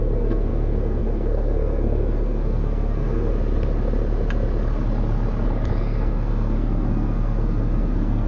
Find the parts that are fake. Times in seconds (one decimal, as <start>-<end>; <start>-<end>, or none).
0.0-3.3; 5.8-8.3